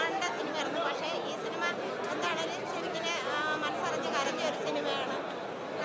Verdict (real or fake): real